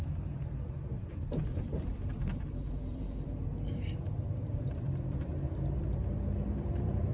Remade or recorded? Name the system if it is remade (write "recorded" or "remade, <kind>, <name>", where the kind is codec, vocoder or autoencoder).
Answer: remade, vocoder, BigVGAN v2